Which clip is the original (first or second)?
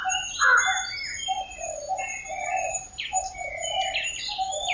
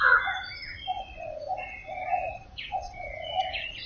first